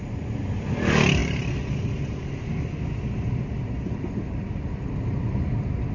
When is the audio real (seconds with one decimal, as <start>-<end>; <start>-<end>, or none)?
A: 0.0-5.9